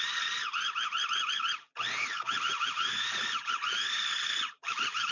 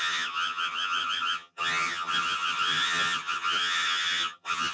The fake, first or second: second